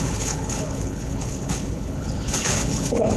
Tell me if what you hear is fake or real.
fake